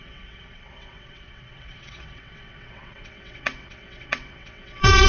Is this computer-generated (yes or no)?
yes